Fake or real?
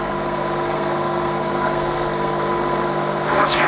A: fake